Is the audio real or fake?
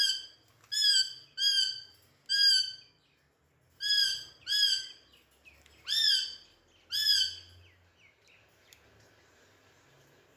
real